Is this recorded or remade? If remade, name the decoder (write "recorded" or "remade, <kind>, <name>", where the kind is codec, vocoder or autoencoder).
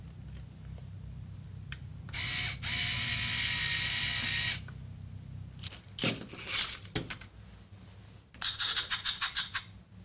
recorded